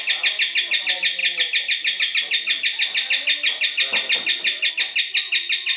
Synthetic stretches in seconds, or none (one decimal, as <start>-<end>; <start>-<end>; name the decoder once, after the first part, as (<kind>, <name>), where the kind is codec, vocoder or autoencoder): none